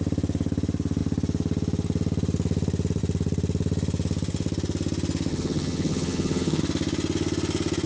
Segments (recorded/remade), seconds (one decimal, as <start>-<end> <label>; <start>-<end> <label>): 0.0-5.3 recorded; 5.3-6.6 remade; 6.6-7.9 recorded